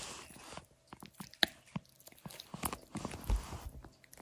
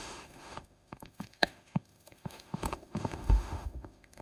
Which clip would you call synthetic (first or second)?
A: second